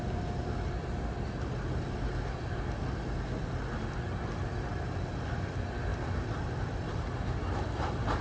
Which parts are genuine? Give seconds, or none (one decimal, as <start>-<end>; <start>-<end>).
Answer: 0.0-8.2